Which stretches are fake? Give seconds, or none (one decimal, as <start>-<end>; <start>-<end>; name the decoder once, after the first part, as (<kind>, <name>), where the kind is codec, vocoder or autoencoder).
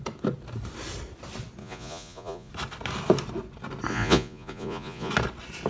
1.6-2.5 (vocoder, Vocos); 3.9-5.1